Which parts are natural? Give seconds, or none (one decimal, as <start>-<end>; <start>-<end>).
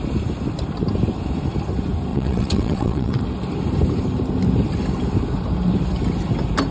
0.0-2.1; 3.2-6.7